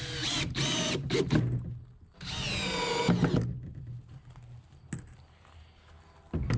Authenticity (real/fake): real